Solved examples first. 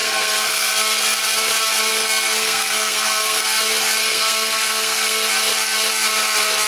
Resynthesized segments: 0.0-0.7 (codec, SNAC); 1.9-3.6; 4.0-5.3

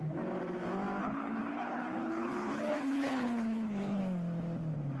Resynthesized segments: 1.0-4.0 (codec, HILCodec)

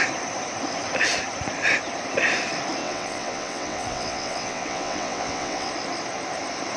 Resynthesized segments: 2.8-5.7 (vocoder, WaveNeXt)

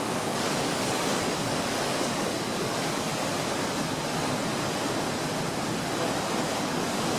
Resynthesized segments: 0.0-3.1 (codec, DAC); 6.4-7.2

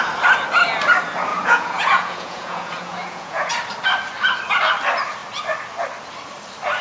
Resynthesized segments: 1.3-3.5 (vocoder, Vocos)

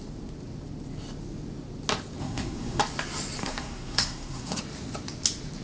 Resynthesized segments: 2.2-2.8 (codec, SNAC); 3.4-4.6